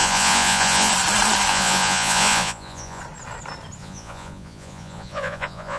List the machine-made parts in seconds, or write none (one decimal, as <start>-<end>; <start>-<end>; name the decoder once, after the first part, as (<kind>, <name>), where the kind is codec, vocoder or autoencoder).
0.0-0.9 (vocoder, Vocos); 1.5-3.0; 3.8-5.8